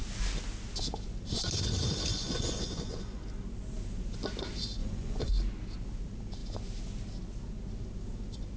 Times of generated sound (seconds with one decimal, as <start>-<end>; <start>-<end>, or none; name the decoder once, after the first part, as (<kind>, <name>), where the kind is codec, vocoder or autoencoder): 2.1-3.2 (vocoder, Vocos); 4.8-5.3